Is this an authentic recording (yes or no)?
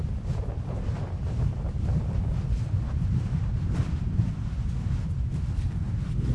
yes